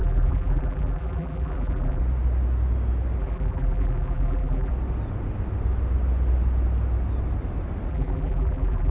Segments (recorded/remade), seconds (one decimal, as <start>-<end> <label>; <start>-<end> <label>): 0.0-2.0 remade; 2.0-3.2 recorded; 3.2-4.7 remade; 4.7-7.9 recorded; 7.9-8.9 remade

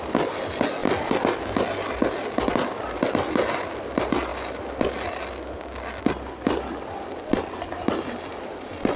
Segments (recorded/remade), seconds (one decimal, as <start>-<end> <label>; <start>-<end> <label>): 0.0-9.0 recorded

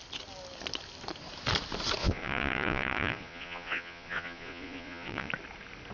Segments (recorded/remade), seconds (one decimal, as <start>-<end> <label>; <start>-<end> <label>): 0.0-2.0 recorded; 2.0-5.3 remade; 5.3-5.9 recorded

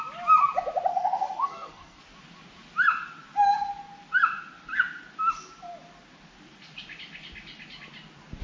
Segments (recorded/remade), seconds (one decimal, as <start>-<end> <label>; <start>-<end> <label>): 0.0-0.9 recorded; 0.9-2.0 remade; 2.0-8.4 recorded

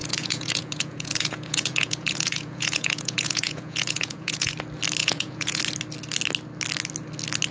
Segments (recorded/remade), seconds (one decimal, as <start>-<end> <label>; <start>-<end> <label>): 0.0-4.5 remade; 4.5-5.0 recorded; 5.0-5.6 remade; 5.6-7.5 recorded

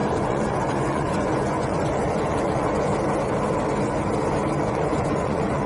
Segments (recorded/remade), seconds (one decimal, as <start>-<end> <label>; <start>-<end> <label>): 0.0-2.9 remade; 2.9-4.6 recorded; 4.6-5.7 remade